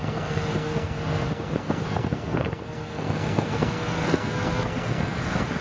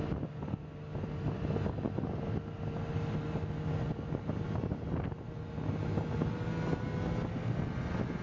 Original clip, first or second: second